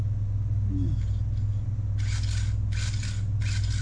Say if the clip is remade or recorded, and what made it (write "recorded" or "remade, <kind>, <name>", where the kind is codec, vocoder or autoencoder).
recorded